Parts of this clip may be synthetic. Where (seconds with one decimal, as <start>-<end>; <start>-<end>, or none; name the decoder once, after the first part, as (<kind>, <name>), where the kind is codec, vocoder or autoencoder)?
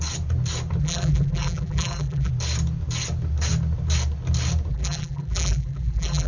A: 0.8-2.3 (vocoder, BigVGAN v2); 4.7-6.3